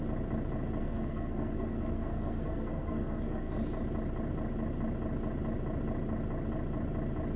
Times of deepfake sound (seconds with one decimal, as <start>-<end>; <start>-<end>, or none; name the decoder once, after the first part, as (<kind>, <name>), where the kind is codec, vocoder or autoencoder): 0.8-3.6 (codec, SNAC)